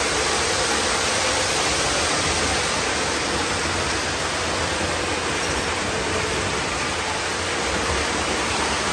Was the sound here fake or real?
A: real